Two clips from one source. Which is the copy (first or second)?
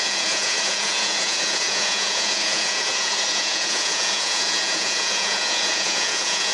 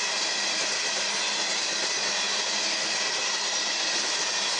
first